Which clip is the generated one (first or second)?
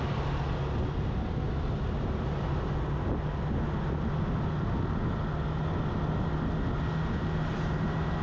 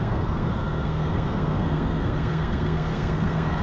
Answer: second